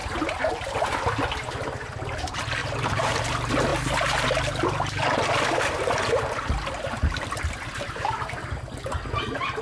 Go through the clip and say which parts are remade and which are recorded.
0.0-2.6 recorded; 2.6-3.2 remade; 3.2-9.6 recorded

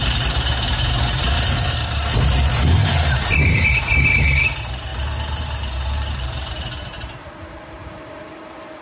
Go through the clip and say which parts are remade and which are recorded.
0.0-4.9 remade; 4.9-5.4 recorded; 5.4-8.8 remade

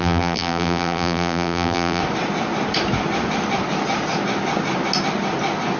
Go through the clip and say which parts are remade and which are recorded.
0.0-2.0 remade; 2.0-5.8 recorded

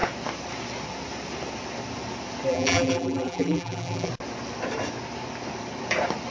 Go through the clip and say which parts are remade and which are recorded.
0.0-2.5 recorded; 2.5-4.1 remade; 4.1-6.3 recorded

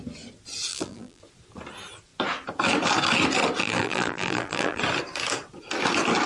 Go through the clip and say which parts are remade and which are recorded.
0.0-0.7 recorded; 0.7-1.2 remade; 1.2-3.6 recorded; 3.6-4.8 remade; 4.8-6.3 recorded

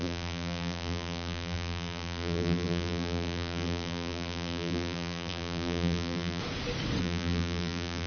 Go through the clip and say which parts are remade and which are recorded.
0.0-6.4 remade; 6.4-7.0 recorded; 7.0-8.1 remade

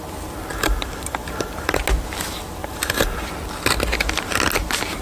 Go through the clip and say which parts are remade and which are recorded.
0.0-0.5 recorded; 0.5-1.8 remade; 1.8-2.6 recorded; 2.6-3.3 remade; 3.3-5.0 recorded